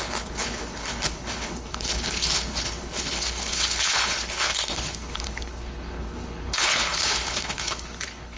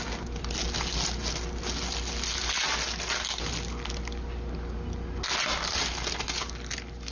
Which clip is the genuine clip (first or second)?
second